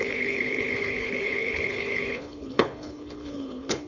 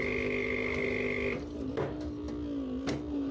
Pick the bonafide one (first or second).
second